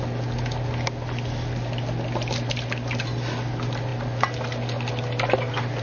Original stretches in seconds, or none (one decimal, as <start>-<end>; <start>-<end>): 0.0-5.8